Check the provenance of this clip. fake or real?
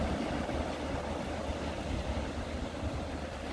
real